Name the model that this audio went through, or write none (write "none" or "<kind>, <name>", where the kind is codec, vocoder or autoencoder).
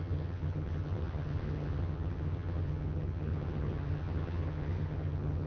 vocoder, HiFi-GAN